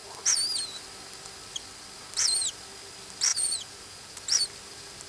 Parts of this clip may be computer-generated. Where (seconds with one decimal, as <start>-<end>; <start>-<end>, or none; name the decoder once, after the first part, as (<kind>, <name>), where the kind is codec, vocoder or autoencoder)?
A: 3.3-4.2 (vocoder, Vocos)